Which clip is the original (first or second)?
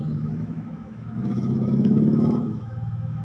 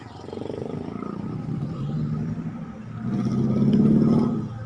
second